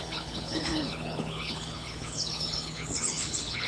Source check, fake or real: fake